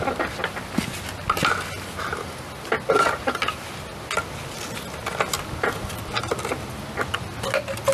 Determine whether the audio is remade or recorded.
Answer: recorded